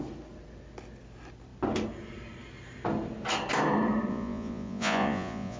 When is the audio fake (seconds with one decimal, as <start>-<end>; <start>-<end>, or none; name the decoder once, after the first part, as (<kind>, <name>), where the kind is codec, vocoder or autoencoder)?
4.1-5.6 (vocoder, Vocos)